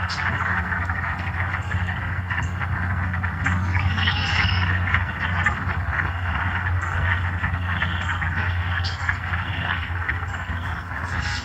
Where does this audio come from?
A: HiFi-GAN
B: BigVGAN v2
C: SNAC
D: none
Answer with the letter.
C